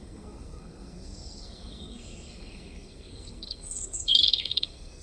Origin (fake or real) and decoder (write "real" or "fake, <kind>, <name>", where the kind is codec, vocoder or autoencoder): fake, codec, SNAC